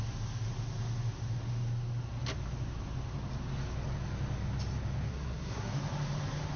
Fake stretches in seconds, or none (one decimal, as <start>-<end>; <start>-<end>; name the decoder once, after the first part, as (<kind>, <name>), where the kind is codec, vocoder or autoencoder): 5.1-5.8 (codec, SNAC)